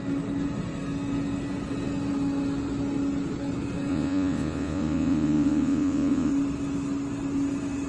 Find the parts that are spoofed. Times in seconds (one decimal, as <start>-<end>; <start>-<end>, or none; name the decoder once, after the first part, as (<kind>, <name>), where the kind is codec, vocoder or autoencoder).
3.9-6.3 (vocoder, Vocos)

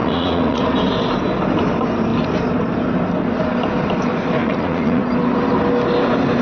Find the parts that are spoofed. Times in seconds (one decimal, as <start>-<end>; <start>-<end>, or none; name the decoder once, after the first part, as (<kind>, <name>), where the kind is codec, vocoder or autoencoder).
0.0-0.6 (vocoder, Vocos); 4.4-5.0

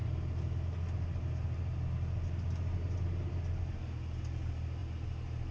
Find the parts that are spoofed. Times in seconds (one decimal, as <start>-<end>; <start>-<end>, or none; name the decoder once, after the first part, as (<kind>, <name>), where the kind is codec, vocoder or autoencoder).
none

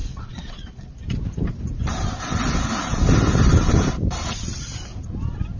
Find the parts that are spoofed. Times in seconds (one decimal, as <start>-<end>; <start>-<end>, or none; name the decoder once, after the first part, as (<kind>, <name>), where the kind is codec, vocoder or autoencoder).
0.0-1.0 (vocoder, Vocos)